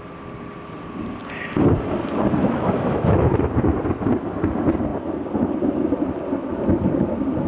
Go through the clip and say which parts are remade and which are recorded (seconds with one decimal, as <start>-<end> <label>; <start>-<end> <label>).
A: 0.0-2.4 recorded; 2.4-3.5 remade; 3.5-7.5 recorded